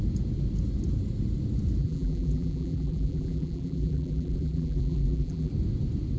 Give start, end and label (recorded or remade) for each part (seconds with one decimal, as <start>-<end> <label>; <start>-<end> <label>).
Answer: 0.0-1.8 recorded; 1.8-5.5 remade; 5.5-6.2 recorded